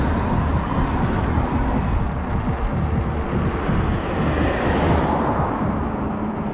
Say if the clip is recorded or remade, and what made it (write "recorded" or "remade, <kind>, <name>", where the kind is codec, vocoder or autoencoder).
recorded